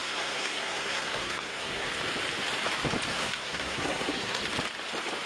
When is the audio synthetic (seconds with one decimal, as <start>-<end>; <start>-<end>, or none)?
0.0-1.9; 3.1-4.4